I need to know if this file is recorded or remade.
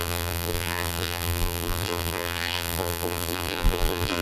remade